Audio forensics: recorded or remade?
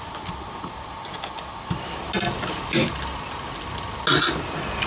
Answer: recorded